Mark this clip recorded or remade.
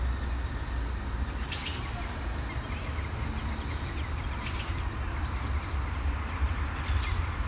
recorded